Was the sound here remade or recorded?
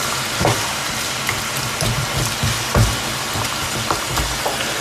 recorded